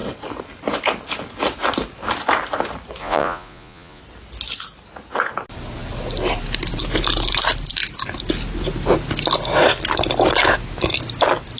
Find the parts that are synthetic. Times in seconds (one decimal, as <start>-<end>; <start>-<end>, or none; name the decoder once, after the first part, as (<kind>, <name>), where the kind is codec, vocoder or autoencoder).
3.0-4.0 (vocoder, Vocos)